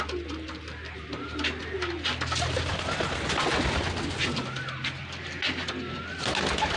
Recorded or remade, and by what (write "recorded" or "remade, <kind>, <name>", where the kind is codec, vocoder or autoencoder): recorded